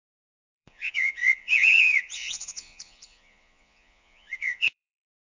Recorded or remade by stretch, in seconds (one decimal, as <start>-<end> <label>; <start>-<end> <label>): 0.0-5.2 remade